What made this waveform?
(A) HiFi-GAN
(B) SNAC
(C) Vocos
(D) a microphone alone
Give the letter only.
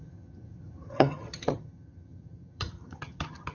A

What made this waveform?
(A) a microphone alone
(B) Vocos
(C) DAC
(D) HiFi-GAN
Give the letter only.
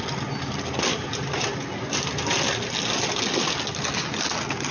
A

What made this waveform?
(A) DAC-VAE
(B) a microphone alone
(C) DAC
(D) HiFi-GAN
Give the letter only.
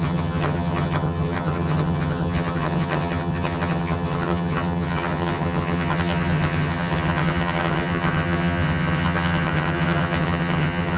D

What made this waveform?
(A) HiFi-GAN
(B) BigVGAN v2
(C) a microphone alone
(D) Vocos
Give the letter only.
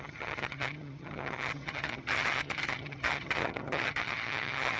A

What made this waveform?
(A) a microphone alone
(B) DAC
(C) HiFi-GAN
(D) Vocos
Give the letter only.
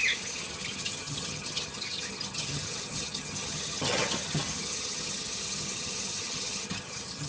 C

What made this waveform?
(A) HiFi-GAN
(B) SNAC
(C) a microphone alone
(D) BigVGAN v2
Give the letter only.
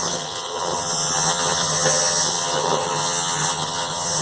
A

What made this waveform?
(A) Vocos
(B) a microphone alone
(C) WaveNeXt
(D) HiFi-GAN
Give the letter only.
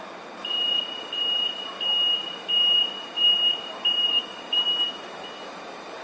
B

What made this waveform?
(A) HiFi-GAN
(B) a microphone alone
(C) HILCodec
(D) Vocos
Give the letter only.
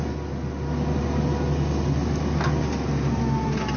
B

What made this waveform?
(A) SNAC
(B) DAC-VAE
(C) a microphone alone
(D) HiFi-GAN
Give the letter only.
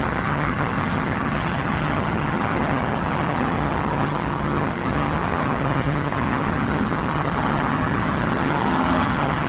D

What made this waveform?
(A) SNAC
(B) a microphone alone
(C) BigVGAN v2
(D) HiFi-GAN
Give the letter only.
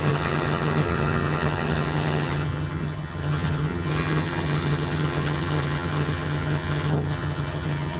D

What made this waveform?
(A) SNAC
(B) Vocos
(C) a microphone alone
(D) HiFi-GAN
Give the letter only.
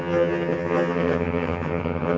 D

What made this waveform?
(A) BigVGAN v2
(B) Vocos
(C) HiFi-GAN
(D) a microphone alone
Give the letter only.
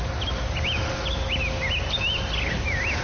D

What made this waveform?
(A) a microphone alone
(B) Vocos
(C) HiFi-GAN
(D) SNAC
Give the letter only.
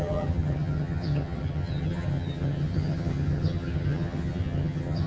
C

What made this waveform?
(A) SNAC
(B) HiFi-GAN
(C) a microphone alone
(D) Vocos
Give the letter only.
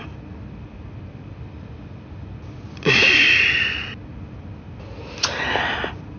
C